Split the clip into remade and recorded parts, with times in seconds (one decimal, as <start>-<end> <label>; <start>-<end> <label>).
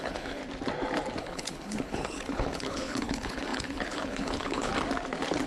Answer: 0.0-0.4 remade; 0.4-1.2 recorded; 1.2-4.7 remade; 4.7-5.5 recorded